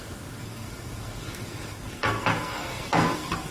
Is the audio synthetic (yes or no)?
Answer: yes